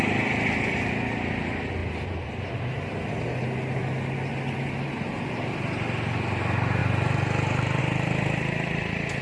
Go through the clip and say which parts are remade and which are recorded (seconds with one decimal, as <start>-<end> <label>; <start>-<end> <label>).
0.0-9.2 recorded